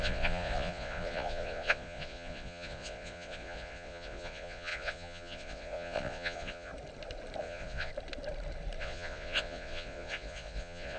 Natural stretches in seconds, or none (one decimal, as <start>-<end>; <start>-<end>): 6.7-7.4; 7.9-8.8